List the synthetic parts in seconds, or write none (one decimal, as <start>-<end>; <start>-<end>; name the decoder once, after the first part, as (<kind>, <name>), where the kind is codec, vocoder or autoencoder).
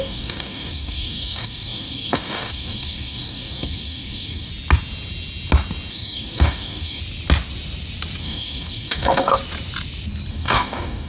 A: 0.0-4.5 (codec, DAC); 5.9-7.0; 8.2-9.4; 10.3-11.1